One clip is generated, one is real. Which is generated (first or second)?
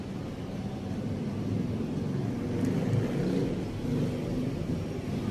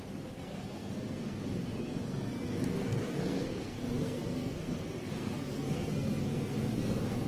second